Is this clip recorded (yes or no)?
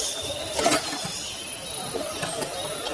yes